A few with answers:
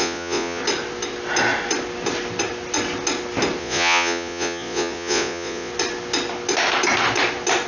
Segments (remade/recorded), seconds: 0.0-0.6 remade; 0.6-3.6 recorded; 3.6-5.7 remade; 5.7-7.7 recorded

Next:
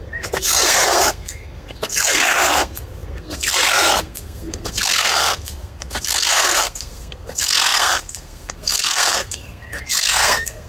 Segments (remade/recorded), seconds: 0.0-10.7 remade

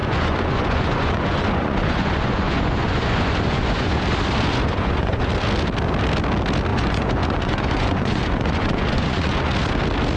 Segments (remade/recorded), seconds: 0.0-4.0 remade; 4.0-4.5 recorded; 4.5-5.3 remade; 5.3-6.7 recorded; 6.7-9.5 remade; 9.5-10.2 recorded

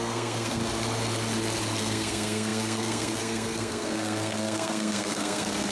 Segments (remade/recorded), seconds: 0.0-0.6 remade; 0.6-1.8 recorded; 1.8-5.7 remade

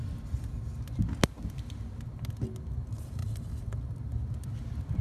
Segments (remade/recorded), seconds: 0.0-5.0 recorded

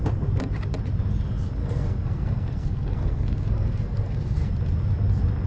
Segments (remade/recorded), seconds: 0.0-1.6 recorded; 1.6-4.5 remade; 4.5-5.5 recorded

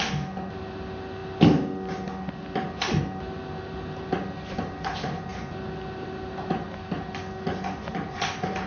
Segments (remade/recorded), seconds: 0.0-8.7 recorded

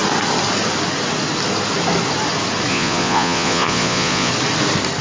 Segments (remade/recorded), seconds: 0.0-2.7 recorded; 2.7-4.3 remade; 4.3-5.0 recorded